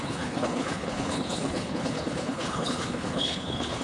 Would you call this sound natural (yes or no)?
no